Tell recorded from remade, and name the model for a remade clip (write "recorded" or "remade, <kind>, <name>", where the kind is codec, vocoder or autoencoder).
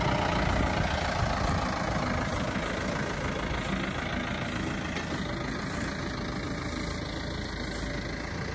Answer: recorded